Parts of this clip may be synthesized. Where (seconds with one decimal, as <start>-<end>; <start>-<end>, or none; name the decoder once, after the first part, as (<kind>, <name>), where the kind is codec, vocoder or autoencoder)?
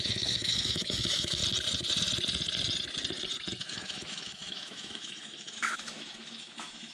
0.0-1.4 (autoencoder, DAC-VAE); 3.6-6.9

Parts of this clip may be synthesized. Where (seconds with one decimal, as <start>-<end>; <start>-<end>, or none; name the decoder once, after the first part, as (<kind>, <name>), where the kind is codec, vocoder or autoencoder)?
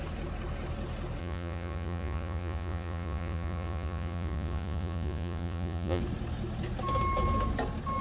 1.2-6.0 (vocoder, Vocos)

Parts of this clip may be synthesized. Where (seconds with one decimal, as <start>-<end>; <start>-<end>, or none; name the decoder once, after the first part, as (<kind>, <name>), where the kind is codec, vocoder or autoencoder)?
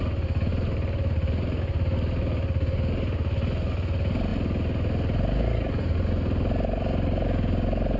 0.5-1.6 (vocoder, BigVGAN v2)